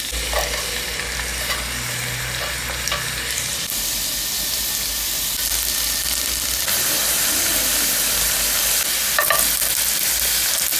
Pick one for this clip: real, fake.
real